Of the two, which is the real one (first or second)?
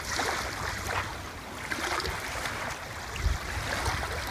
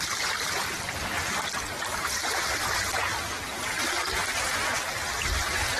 first